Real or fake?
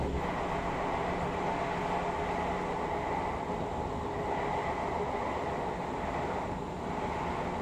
real